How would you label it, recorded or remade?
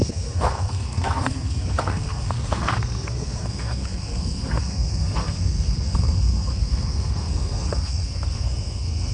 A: remade